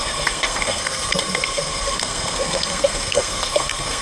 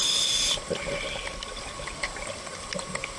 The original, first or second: second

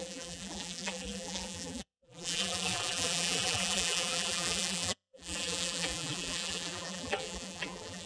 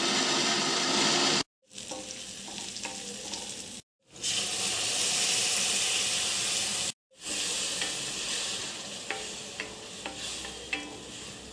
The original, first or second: second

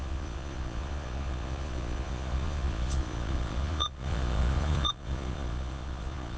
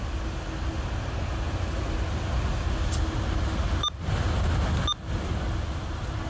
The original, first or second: second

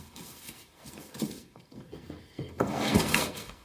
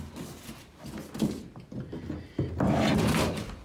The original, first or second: second